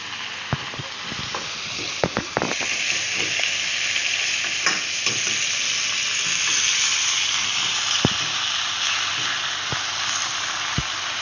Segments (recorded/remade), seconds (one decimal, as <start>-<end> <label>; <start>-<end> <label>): 0.0-11.2 recorded